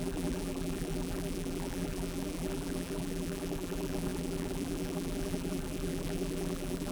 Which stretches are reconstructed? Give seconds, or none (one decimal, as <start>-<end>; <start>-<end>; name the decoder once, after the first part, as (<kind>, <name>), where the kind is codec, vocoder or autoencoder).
0.0-6.9 (vocoder, BigVGAN v2)